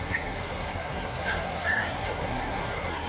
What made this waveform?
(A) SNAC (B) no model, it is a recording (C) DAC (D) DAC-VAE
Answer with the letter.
A